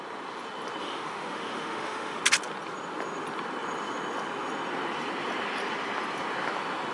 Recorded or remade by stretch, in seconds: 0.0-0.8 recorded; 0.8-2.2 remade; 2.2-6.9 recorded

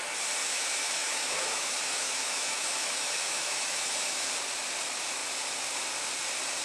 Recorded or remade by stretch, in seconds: 0.0-0.4 recorded; 0.4-4.3 remade; 4.3-6.6 recorded

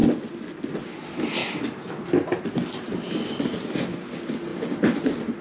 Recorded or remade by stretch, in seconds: 0.0-1.4 recorded; 1.4-2.0 remade; 2.0-5.4 recorded

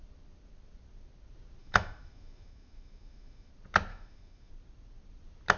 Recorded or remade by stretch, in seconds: 0.0-1.6 recorded; 1.6-3.5 remade; 3.5-3.9 recorded; 3.9-4.5 remade; 4.5-5.6 recorded

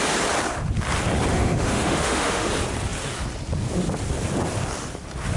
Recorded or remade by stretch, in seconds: 0.0-1.3 recorded; 1.3-2.5 remade; 2.5-5.4 recorded

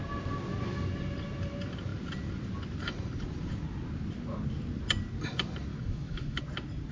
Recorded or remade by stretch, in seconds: 0.0-5.7 recorded; 5.7-6.4 remade; 6.4-6.9 recorded